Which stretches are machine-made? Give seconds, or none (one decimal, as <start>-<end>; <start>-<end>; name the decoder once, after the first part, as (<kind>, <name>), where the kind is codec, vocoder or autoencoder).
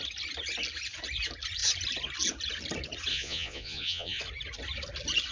3.1-4.2 (vocoder, Vocos)